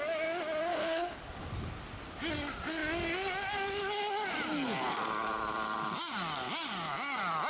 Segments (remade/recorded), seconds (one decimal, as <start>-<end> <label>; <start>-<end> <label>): 0.0-0.7 recorded; 0.7-1.2 remade; 1.2-7.5 recorded